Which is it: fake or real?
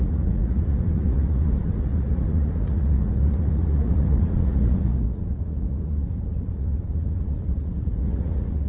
fake